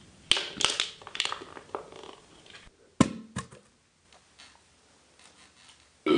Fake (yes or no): no